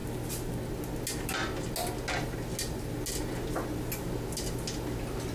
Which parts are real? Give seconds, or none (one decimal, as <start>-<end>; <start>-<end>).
0.0-5.3